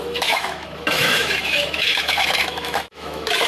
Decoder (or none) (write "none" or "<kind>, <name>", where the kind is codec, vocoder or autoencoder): autoencoder, DAC-VAE